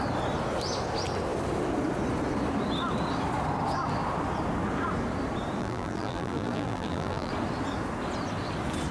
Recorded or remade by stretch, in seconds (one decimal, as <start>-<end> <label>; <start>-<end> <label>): 0.0-5.6 recorded; 5.6-7.3 remade; 7.3-8.9 recorded